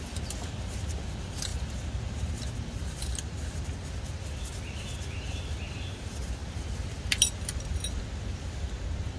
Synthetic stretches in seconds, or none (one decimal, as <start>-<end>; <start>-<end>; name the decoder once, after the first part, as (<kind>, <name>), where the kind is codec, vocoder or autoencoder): none